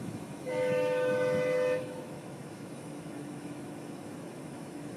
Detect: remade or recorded remade